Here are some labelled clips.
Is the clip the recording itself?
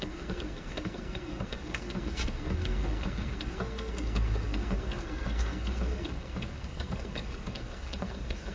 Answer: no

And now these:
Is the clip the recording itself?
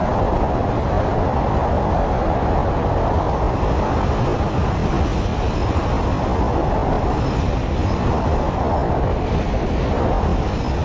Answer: yes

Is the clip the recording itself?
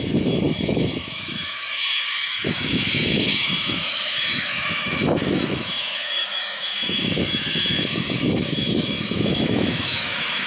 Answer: no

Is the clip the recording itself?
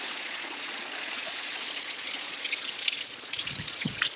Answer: no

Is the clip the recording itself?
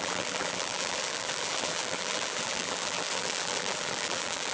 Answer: no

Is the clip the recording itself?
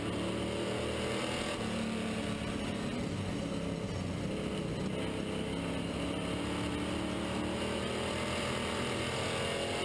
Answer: yes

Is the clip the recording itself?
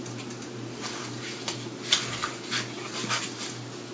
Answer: yes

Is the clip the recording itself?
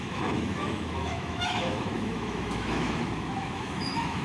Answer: no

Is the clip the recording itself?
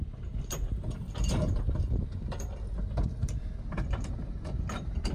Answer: yes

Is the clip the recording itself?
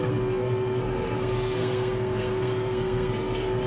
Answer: no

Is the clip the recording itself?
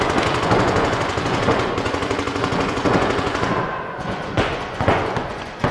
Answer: no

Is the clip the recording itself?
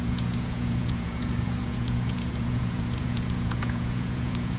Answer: no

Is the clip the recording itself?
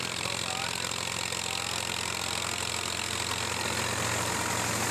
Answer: yes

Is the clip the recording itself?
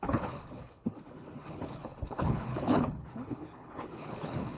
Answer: no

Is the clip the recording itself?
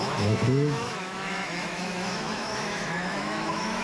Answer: no